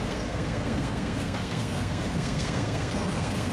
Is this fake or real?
fake